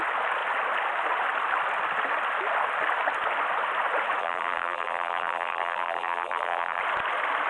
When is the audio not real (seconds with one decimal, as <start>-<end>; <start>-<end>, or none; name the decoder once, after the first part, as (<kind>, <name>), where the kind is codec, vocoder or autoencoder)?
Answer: 4.2-6.8 (vocoder, BigVGAN v2)